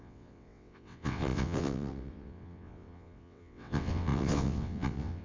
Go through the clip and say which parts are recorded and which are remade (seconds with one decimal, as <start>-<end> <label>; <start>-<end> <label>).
0.0-5.2 remade